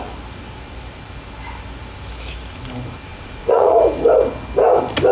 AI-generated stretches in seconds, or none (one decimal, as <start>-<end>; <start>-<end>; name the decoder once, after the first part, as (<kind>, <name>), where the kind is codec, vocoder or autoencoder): 3.1-3.8 (vocoder, Vocos)